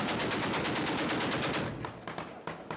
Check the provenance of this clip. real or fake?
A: real